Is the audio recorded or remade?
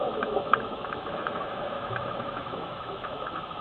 remade